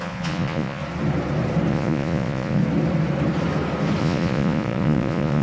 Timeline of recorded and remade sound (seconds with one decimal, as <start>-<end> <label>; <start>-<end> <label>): 0.0-0.8 remade; 0.8-1.7 recorded; 1.7-2.6 remade; 2.6-4.0 recorded; 4.0-5.4 remade

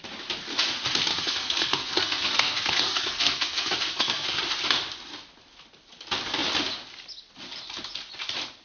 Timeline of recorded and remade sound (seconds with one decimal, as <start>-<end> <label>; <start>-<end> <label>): 0.0-1.1 recorded; 1.1-4.4 remade; 4.4-8.6 recorded

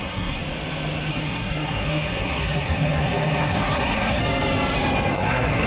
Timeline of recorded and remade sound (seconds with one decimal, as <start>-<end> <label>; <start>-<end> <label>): 0.0-0.4 remade; 0.4-1.1 recorded; 1.1-4.2 remade; 4.2-5.1 recorded; 5.1-5.7 remade

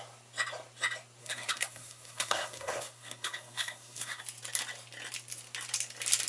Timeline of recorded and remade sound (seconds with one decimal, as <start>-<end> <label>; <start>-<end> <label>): 0.0-1.2 recorded; 1.2-4.2 remade; 4.2-6.3 recorded

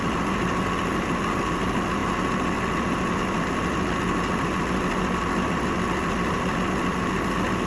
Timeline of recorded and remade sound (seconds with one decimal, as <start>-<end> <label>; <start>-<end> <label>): 0.0-7.7 recorded

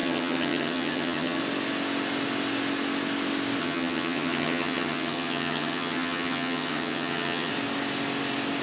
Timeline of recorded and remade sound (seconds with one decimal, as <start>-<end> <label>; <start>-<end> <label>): 0.0-1.4 remade; 1.4-3.6 recorded; 3.6-7.5 remade; 7.5-8.6 recorded

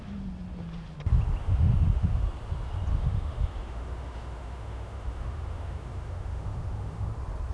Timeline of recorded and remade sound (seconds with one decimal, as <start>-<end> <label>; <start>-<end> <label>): 0.0-1.4 recorded; 1.4-2.2 remade; 2.2-2.9 recorded; 2.9-7.1 remade; 7.1-7.5 recorded